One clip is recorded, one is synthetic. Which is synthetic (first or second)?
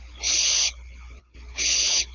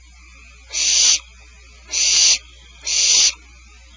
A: first